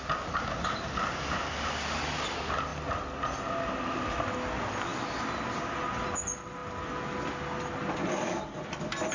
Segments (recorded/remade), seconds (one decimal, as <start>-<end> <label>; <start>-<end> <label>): 0.0-9.1 recorded